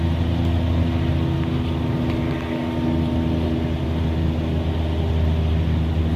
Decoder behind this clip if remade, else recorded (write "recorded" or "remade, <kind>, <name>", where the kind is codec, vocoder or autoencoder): recorded